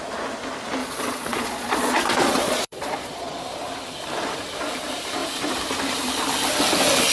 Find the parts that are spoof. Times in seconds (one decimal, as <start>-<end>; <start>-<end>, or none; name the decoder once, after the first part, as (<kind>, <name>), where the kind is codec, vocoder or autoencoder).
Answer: 0.8-3.4 (vocoder, Vocos)